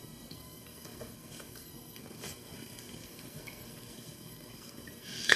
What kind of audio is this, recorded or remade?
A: remade